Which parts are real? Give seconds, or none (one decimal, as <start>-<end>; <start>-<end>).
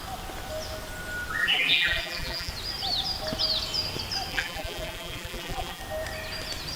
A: 0.0-1.4; 2.5-4.3; 5.8-6.8